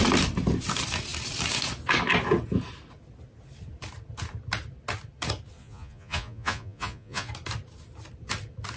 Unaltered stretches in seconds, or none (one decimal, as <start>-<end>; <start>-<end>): 0.0-5.6; 7.3-8.8